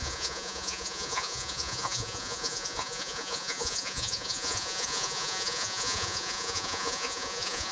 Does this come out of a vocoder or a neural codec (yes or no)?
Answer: yes